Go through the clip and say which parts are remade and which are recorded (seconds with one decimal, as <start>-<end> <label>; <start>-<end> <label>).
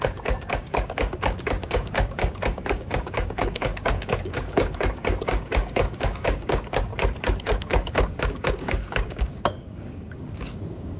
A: 0.0-6.9 remade; 6.9-7.4 recorded; 7.4-11.0 remade